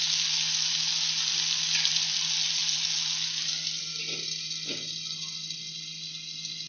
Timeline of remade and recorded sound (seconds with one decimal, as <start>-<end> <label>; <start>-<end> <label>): 0.0-6.7 recorded